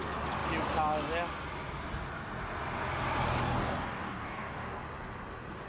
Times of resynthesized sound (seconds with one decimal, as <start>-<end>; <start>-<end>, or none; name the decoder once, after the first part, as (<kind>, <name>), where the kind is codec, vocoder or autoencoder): 3.4-4.8 (codec, DAC)